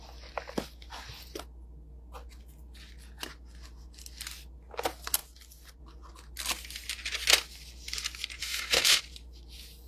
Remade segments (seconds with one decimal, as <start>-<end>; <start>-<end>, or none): 8.4-9.0